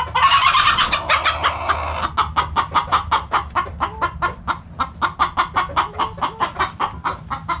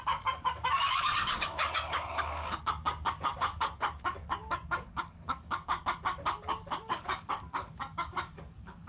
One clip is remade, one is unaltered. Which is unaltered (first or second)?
first